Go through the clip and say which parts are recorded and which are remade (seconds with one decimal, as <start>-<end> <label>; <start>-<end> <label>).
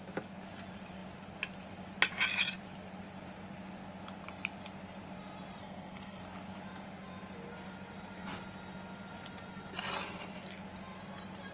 0.0-5.6 recorded; 5.6-6.2 remade; 6.2-11.5 recorded